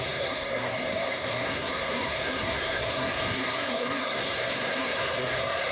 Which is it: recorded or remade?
remade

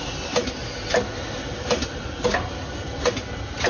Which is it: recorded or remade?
recorded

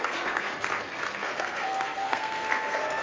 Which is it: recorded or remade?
remade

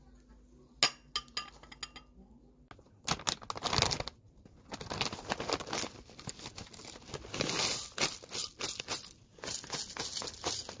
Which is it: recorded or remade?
recorded